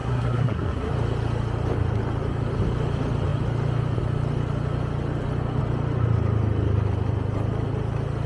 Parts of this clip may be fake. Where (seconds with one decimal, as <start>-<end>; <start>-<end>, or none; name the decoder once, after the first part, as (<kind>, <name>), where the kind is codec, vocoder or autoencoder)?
0.0-0.9 (codec, SNAC)